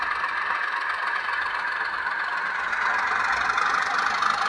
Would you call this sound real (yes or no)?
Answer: yes